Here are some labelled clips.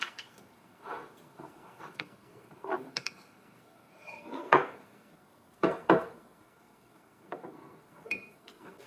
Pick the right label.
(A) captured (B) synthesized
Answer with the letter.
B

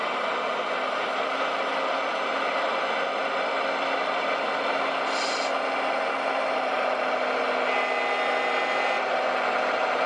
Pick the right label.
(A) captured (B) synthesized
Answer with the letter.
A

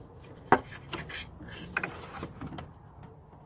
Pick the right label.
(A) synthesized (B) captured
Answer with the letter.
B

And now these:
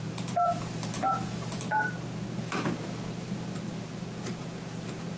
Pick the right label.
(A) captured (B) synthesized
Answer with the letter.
B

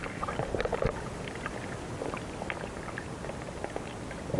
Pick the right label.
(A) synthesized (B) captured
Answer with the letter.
B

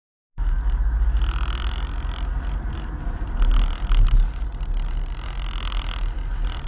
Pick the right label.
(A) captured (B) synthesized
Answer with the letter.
A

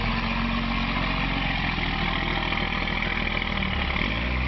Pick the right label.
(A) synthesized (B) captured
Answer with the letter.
B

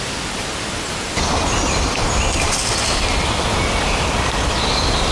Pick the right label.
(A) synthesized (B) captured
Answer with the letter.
B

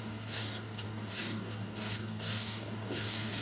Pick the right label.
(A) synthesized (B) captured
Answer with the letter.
A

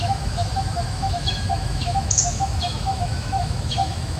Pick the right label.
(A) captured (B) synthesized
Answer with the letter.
B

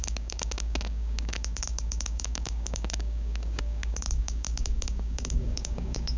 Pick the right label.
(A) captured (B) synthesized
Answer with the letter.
B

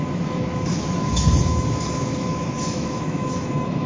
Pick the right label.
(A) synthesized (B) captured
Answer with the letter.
A